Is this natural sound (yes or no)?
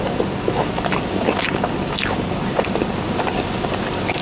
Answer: yes